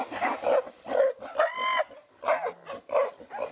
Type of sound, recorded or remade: recorded